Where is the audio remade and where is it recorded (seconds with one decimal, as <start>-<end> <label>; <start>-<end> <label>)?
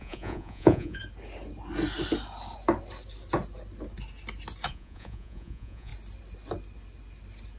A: 0.0-1.0 remade; 1.0-4.7 recorded; 4.7-5.9 remade; 5.9-7.6 recorded